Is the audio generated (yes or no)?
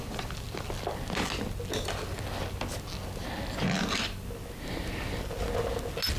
no